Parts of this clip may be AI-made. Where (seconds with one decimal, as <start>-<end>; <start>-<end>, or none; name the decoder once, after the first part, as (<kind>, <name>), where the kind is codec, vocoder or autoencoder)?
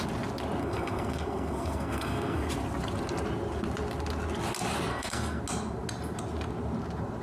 0.6-2.5 (codec, SNAC); 4.9-5.4